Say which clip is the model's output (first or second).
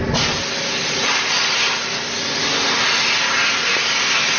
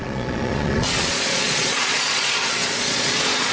second